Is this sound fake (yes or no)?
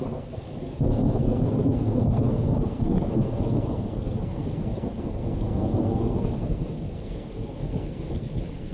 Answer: yes